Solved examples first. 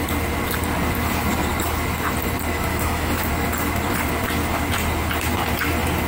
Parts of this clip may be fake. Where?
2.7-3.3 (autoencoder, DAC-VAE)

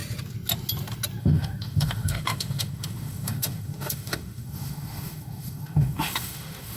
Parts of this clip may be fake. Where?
1.2-6.8 (autoencoder, DAC-VAE)

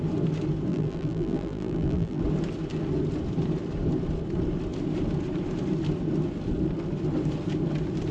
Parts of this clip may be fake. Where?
0.7-2.2 (vocoder, BigVGAN v2)